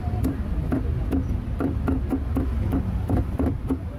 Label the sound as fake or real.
real